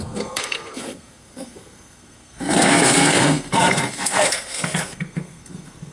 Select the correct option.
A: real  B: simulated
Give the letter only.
B